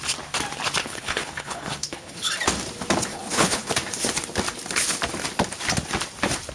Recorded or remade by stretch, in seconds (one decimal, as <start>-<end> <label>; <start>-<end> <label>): 0.0-0.8 recorded; 0.8-2.3 remade; 2.3-3.1 recorded; 3.1-3.7 remade; 3.7-6.5 recorded